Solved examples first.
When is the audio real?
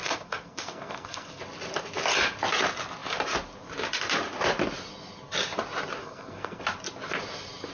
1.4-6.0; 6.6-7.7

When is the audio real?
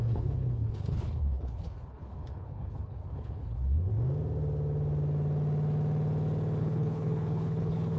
3.9-6.6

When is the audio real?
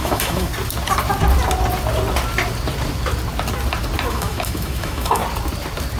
0.5-4.1; 5.2-6.0